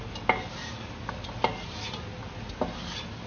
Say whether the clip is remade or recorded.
recorded